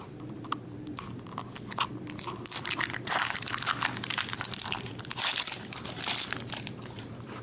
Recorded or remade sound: remade